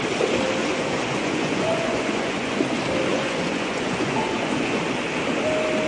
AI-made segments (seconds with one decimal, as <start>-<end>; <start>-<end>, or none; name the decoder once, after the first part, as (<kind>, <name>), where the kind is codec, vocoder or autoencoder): 0.6-2.6 (vocoder, Vocos); 3.1-4.8